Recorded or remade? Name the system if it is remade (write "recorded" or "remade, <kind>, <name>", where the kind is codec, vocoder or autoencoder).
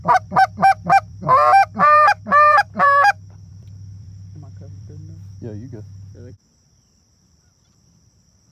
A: remade, vocoder, BigVGAN v2